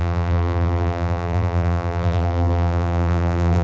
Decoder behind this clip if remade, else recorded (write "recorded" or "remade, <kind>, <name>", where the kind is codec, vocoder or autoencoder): remade, vocoder, BigVGAN v2